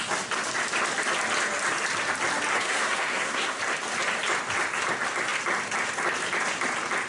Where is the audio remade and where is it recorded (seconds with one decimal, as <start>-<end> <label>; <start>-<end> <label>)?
0.0-2.5 recorded; 2.5-3.6 remade; 3.6-7.1 recorded